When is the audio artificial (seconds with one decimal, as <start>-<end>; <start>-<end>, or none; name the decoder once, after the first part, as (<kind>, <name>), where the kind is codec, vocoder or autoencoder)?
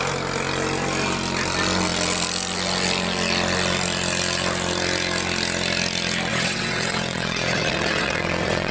6.3-8.7 (vocoder, WaveNeXt)